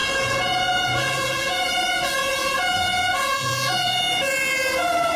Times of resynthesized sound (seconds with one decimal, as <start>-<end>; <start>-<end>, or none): 0.0-1.7; 2.4-4.2